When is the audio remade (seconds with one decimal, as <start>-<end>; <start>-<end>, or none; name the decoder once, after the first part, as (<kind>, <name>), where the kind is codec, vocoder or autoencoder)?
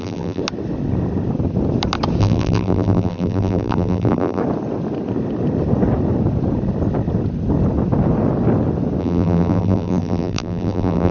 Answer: 0.0-0.4 (vocoder, BigVGAN v2); 2.2-4.4; 9.0-11.1